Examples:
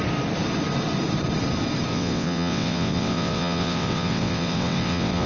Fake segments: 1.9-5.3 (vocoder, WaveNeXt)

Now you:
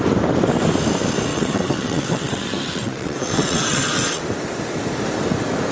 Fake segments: 1.3-4.2 (vocoder, WaveNeXt)

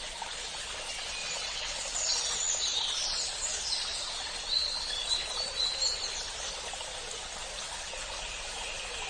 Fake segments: 1.2-2.5 (vocoder, WaveNeXt)

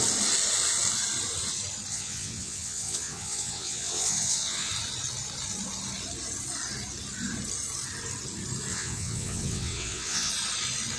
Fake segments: 1.9-4.7 (vocoder, WaveNeXt); 8.7-10.3

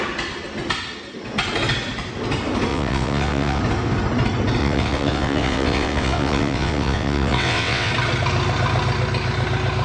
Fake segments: 2.7-3.6 (vocoder, WaveNeXt); 4.6-7.9